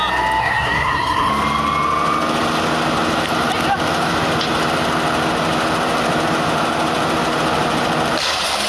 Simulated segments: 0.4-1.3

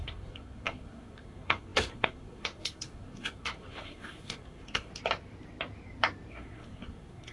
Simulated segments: 0.0-4.9; 6.3-7.3

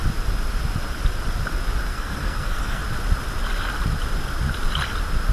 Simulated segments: 1.9-2.8

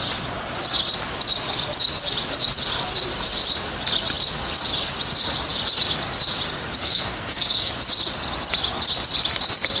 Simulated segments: 6.8-7.7

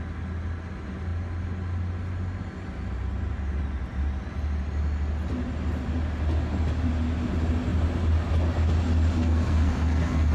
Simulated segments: 9.2-10.3

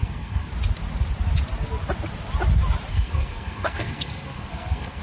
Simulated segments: 0.0-0.5; 2.9-5.0